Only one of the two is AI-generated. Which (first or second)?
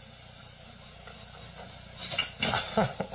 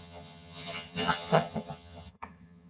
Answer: second